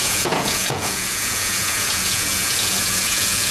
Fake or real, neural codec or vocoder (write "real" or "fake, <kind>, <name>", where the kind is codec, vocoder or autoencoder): fake, vocoder, Vocos